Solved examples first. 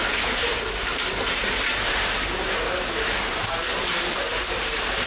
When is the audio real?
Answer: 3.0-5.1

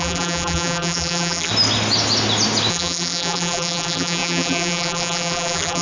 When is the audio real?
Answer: 1.5-2.7